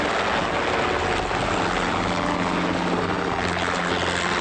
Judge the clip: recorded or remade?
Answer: recorded